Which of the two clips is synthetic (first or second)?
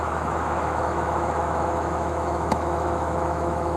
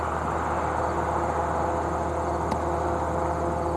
first